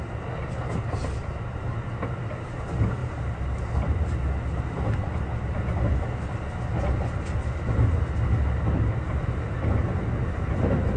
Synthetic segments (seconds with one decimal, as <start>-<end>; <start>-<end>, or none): none